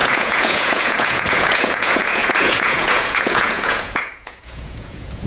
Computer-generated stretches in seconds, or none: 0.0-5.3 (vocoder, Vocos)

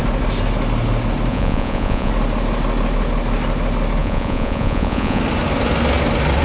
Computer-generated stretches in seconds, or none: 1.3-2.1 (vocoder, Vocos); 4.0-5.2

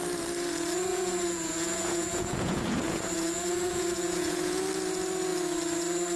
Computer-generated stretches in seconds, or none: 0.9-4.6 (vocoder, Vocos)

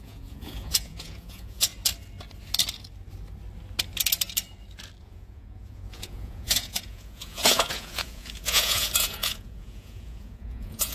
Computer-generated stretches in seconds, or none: 0.0-1.7 (vocoder, Vocos); 5.0-10.9

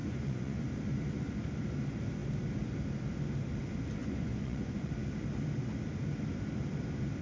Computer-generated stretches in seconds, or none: 0.0-0.6 (vocoder, Vocos); 4.0-4.9

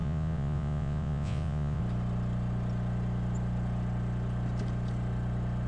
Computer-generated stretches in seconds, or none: 0.0-1.8 (vocoder, Vocos)